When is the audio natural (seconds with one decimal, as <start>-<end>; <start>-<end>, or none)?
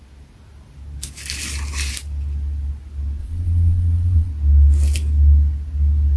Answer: 0.0-3.2; 4.3-6.2